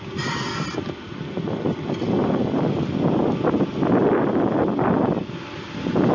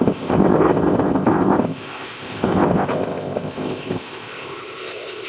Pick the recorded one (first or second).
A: first